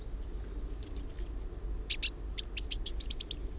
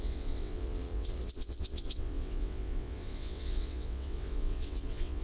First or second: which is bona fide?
first